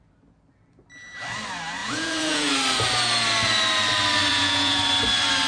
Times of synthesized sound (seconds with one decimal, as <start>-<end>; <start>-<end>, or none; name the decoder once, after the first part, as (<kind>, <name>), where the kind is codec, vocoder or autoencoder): 1.8-2.5 (vocoder, Vocos); 4.3-4.8